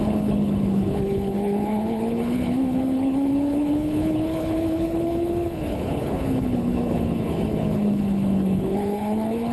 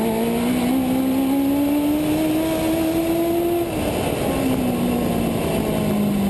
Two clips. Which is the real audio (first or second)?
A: second